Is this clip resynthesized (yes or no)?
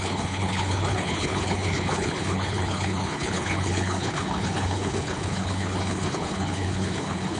yes